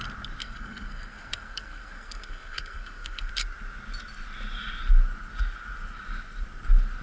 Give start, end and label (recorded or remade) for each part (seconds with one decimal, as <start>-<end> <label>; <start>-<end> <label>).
0.0-0.4 recorded; 0.4-3.3 remade; 3.3-7.0 recorded